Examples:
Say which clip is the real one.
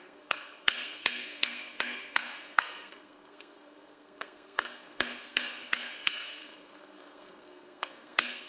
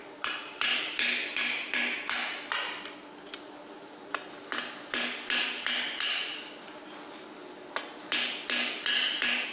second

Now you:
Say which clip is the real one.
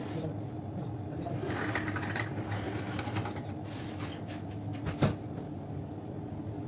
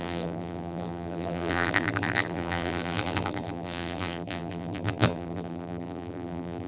first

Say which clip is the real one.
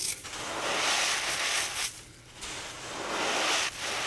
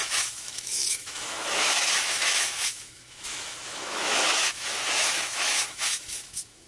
first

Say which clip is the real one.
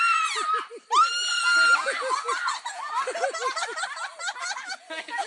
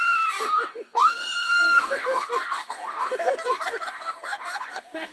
first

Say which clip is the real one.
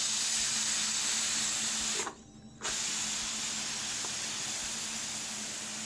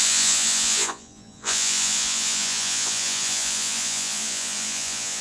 first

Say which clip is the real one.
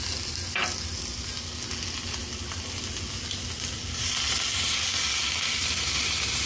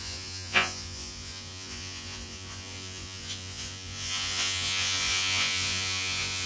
first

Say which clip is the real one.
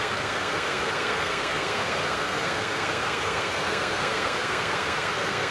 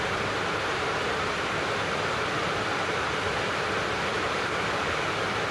second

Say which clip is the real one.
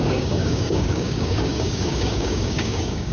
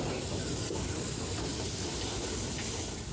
second